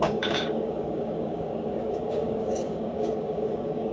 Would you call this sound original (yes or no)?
no